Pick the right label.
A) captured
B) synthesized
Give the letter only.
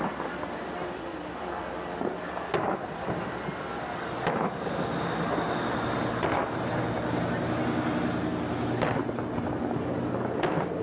A